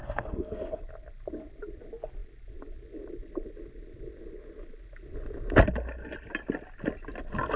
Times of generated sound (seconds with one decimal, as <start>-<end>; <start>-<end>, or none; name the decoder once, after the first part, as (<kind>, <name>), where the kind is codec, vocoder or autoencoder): 0.0-0.8 (codec, SNAC)